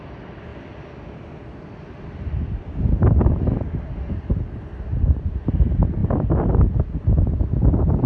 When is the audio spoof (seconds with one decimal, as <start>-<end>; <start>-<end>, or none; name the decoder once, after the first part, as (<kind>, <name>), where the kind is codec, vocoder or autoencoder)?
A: 4.9-5.5 (vocoder, BigVGAN v2)